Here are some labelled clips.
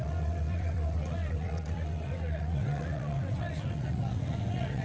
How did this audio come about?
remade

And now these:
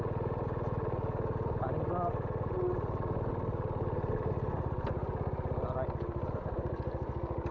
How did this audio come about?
recorded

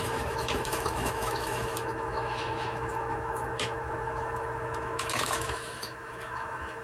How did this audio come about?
remade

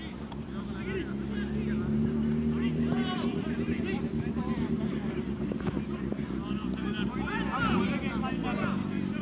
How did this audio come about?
recorded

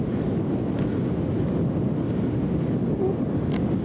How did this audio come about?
recorded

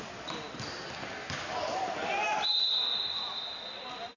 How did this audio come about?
recorded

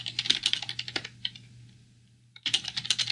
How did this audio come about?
recorded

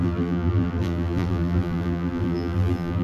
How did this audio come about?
remade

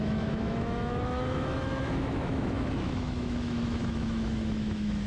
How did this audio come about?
remade